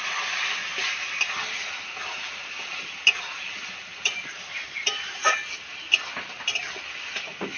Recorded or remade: recorded